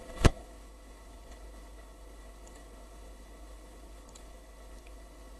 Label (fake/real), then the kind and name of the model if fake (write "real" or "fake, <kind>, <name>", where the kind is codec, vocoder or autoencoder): fake, codec, HILCodec